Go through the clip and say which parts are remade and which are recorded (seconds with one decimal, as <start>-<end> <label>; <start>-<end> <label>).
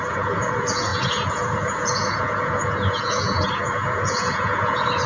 0.0-5.1 remade